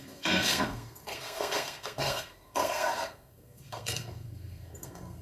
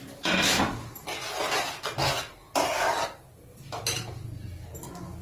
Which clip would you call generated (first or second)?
first